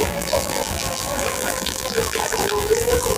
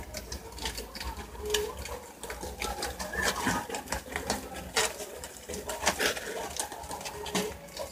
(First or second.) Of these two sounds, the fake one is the first